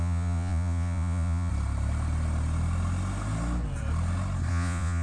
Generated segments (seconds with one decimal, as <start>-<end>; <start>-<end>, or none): 0.0-1.5; 4.5-5.0